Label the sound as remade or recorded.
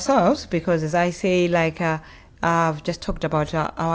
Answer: recorded